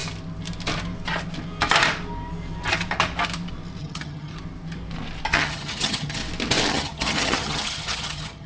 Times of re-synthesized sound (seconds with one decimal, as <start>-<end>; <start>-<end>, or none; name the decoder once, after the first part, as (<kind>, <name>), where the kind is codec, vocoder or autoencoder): 3.8-4.3 (vocoder, HiFi-GAN); 5.3-6.2; 6.7-8.5